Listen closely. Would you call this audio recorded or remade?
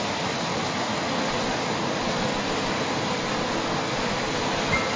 recorded